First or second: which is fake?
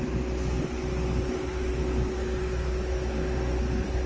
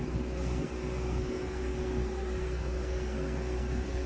second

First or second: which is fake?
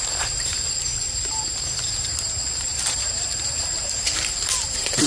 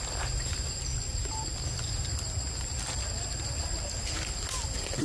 first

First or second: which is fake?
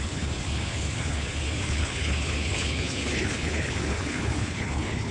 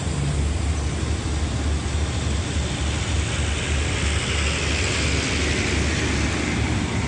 first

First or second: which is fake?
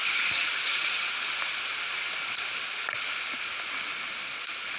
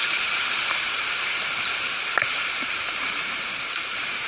second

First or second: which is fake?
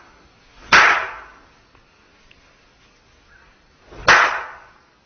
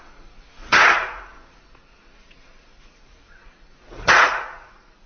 second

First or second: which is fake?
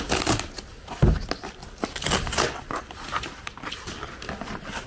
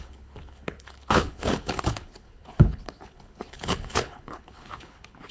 second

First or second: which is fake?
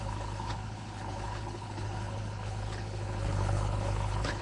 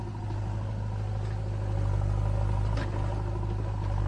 first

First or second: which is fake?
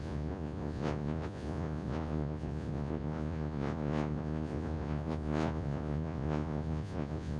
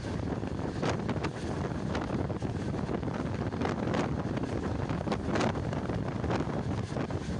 first